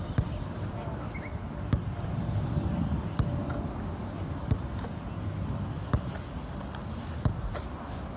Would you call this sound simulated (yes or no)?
no